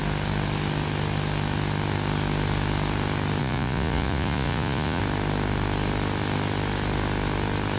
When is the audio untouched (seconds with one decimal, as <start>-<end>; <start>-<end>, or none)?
0.0-3.4; 5.0-7.8

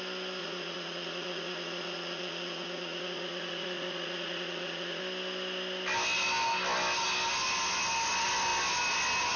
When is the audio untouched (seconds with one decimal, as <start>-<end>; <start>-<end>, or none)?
0.0-0.4; 5.0-9.4

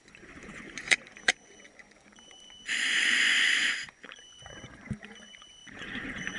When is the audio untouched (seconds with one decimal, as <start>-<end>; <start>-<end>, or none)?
none

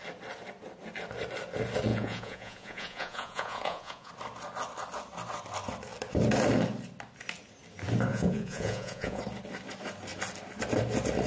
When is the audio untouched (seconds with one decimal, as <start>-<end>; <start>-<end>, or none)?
0.0-1.9; 4.1-8.1; 9.2-11.3

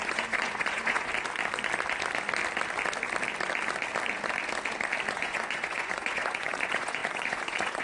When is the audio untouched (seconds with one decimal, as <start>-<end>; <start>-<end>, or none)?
1.1-5.1

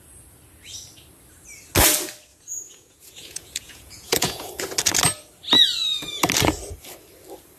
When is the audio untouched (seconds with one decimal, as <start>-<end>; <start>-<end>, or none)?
0.0-2.3; 4.5-7.6

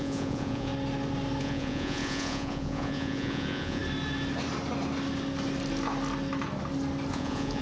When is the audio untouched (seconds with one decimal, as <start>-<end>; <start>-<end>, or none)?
0.7-1.4; 3.8-7.1

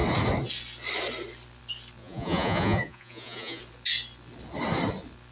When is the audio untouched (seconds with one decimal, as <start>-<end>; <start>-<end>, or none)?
0.0-2.0; 3.6-5.3